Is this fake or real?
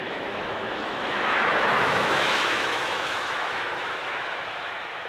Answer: fake